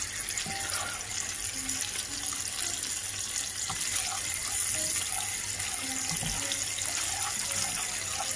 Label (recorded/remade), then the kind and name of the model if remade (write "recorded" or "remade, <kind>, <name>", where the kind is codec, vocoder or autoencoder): recorded